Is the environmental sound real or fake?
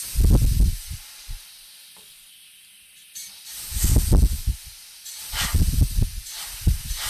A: real